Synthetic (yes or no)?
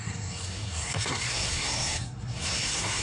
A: yes